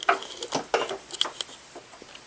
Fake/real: real